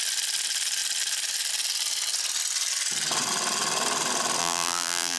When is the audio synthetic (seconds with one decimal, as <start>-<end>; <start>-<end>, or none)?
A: 4.4-5.2